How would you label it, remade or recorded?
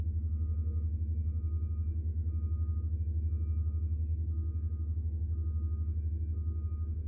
recorded